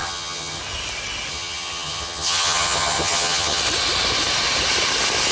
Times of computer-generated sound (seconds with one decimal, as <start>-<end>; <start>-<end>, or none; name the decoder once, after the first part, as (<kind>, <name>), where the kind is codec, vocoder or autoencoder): 0.0-0.6 (vocoder, HiFi-GAN); 1.3-3.6